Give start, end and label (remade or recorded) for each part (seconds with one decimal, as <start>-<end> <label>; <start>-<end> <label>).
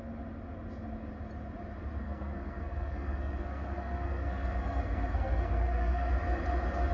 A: 0.0-2.0 recorded; 2.0-6.1 remade; 6.1-6.9 recorded